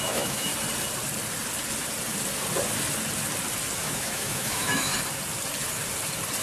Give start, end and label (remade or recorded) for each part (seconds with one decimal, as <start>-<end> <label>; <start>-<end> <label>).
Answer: 0.0-0.5 remade; 0.5-3.8 recorded; 3.8-4.9 remade; 4.9-6.4 recorded